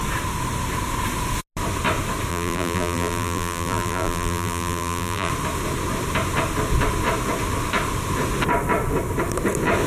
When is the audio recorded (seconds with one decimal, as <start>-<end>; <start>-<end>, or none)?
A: 0.0-2.3; 5.3-9.9